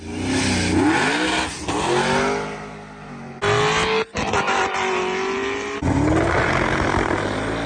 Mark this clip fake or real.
real